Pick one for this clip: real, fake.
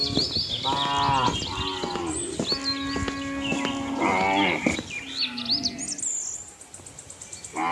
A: real